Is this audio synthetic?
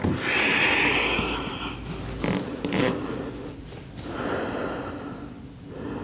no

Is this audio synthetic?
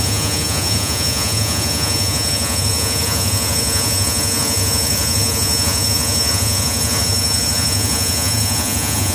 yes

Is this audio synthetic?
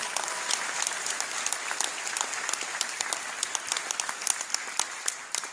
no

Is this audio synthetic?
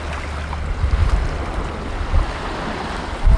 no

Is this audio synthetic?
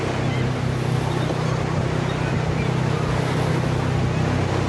no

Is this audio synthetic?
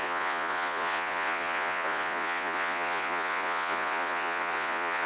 yes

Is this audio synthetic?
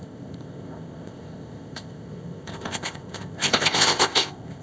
yes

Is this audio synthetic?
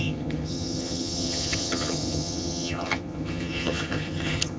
yes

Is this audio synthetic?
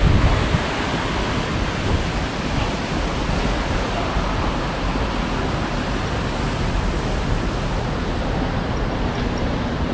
no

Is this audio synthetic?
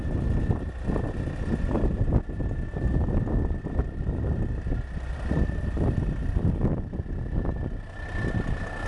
no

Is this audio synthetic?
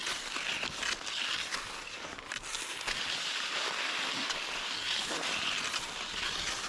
no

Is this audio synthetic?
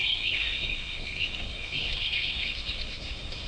yes